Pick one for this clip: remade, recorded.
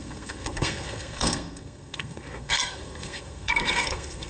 remade